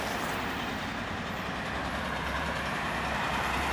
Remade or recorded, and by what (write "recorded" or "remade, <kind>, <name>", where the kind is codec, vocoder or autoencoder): remade, vocoder, BigVGAN v2